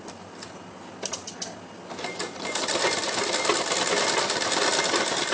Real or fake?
real